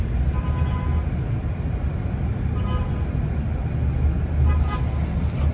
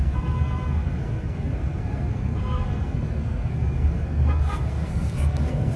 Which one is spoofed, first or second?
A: second